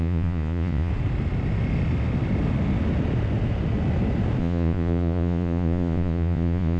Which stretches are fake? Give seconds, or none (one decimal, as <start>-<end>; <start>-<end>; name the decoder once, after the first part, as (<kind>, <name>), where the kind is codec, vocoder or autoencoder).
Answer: 0.0-0.9 (vocoder, Vocos); 4.4-6.8